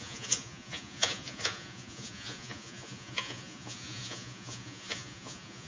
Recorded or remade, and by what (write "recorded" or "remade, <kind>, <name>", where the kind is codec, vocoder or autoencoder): remade, vocoder, Vocos